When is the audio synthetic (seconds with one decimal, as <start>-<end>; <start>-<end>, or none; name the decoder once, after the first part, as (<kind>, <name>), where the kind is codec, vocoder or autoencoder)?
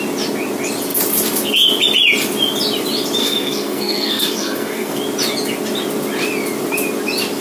3.2-5.0 (codec, SNAC)